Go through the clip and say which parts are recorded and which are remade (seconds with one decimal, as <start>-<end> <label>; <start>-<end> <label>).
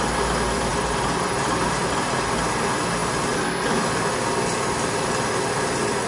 0.0-0.7 recorded; 0.7-2.3 remade; 2.3-6.1 recorded